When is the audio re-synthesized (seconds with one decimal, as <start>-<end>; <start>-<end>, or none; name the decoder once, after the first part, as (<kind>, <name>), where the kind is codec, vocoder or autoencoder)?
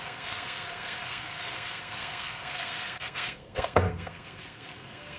0.0-5.2 (codec, SNAC)